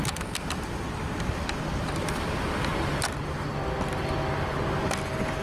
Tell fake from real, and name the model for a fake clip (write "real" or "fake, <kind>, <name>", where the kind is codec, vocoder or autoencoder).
real